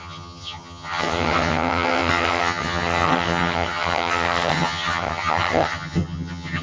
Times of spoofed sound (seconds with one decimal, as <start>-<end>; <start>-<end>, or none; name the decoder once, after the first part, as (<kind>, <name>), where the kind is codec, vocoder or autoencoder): 0.0-6.6 (vocoder, HiFi-GAN)